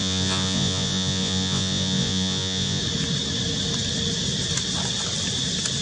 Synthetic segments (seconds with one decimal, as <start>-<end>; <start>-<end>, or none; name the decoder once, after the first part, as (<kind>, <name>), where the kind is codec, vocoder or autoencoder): 0.0-2.8 (vocoder, Vocos)